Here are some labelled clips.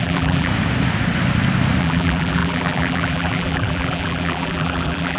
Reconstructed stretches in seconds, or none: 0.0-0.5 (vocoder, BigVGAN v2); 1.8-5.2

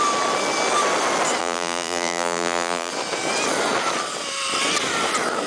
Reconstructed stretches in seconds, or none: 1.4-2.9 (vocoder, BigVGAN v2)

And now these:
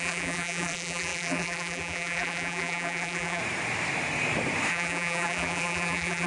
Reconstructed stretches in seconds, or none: 0.0-3.4 (vocoder, BigVGAN v2); 4.7-6.3

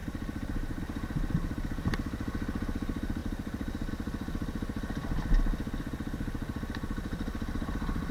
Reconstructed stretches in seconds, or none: 0.0-0.8 (vocoder, BigVGAN v2)

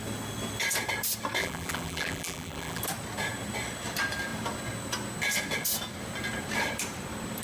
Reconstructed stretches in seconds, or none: 1.4-2.8 (vocoder, BigVGAN v2)